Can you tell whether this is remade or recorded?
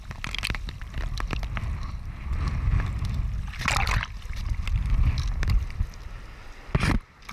recorded